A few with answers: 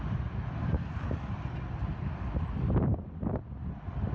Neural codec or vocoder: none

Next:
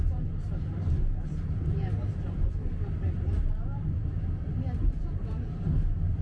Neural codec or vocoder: none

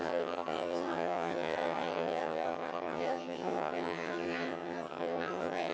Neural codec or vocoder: vocoder, HiFi-GAN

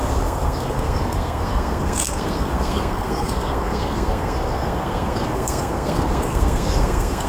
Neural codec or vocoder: codec, SNAC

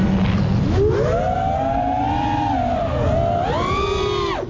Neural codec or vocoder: none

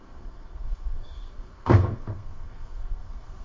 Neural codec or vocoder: codec, SNAC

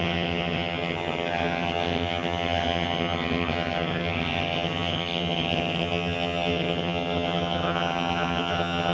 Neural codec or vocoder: vocoder, HiFi-GAN